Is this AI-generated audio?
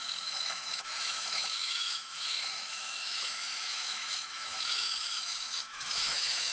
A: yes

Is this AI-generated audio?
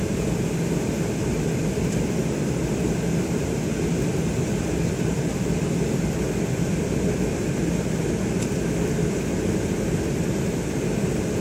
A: no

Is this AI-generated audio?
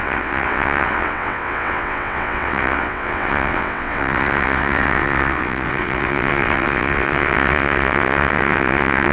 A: yes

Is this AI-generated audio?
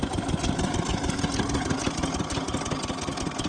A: no